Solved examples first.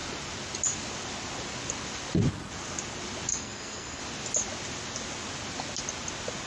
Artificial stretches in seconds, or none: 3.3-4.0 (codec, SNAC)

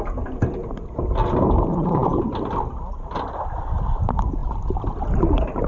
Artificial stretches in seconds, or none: none

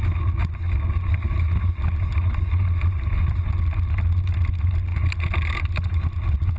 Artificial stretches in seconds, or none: none

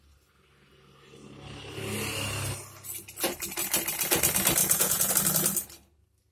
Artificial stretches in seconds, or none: 4.6-5.1 (vocoder, Vocos)